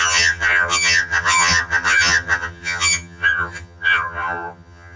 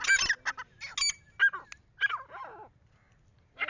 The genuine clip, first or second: second